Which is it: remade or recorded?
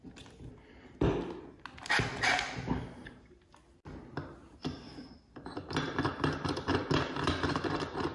recorded